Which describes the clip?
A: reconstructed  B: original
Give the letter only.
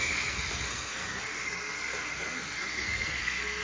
A